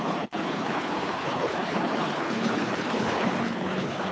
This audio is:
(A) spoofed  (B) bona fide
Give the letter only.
A